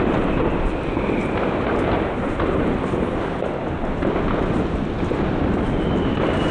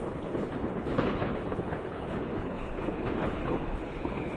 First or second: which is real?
first